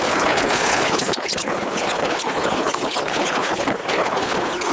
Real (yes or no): no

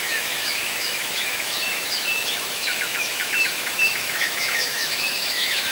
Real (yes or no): no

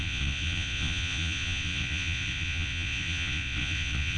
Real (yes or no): no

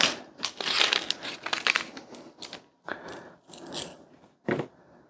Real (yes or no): yes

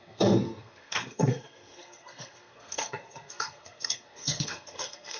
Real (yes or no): no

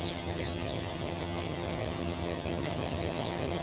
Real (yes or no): no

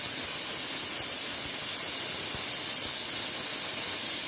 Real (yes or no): yes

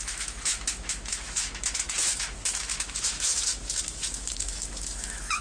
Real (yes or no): no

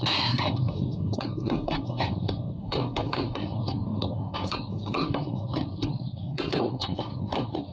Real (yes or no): no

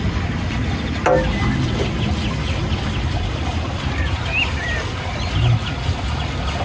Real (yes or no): yes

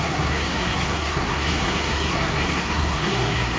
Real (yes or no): no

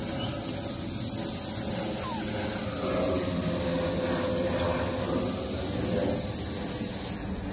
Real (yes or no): yes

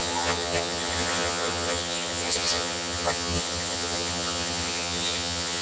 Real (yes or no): no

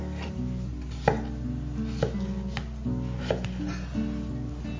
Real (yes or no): yes